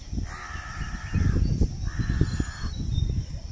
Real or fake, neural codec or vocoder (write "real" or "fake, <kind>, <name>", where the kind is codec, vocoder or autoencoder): real